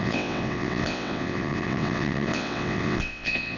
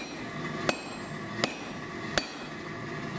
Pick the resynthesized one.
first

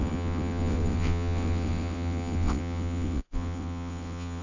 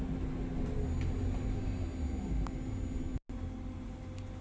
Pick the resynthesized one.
first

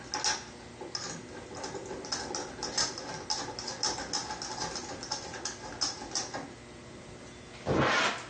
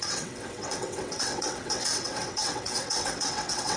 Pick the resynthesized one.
second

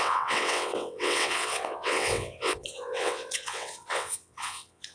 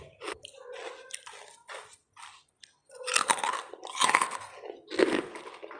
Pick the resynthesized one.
first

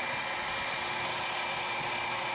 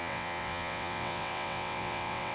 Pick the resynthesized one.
second